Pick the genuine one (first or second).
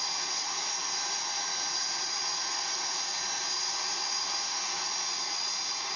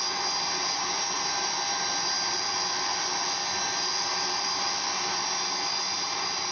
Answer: second